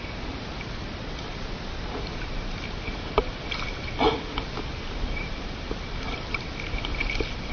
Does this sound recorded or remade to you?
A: recorded